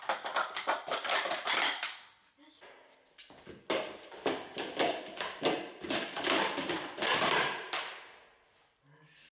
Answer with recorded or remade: recorded